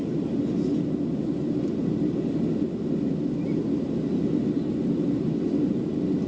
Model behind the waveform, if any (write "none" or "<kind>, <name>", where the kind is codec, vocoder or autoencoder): none